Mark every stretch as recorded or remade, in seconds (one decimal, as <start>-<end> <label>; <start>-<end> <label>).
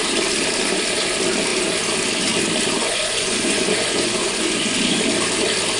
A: 0.0-2.8 recorded; 2.8-5.0 remade; 5.0-5.8 recorded